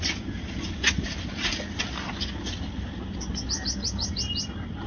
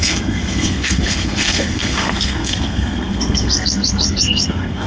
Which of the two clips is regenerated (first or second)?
second